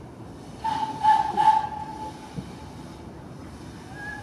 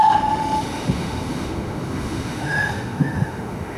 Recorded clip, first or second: first